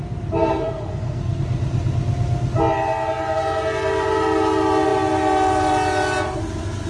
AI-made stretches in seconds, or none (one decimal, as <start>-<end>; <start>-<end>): 0.4-1.4